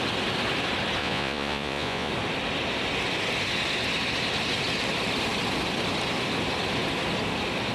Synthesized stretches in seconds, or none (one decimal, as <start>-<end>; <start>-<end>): 1.0-2.1